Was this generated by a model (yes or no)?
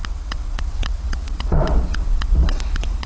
yes